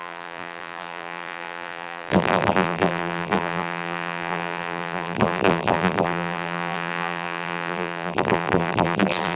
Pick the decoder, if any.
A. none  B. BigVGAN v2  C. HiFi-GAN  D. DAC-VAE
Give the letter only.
B